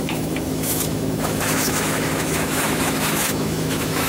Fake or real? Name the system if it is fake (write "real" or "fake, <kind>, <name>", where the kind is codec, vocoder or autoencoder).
fake, autoencoder, DAC-VAE